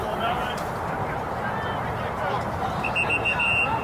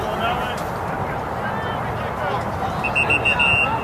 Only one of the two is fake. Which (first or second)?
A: first